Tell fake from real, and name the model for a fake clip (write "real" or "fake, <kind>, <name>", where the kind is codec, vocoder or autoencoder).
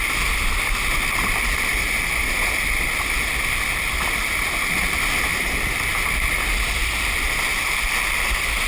real